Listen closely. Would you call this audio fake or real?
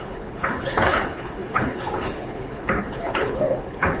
fake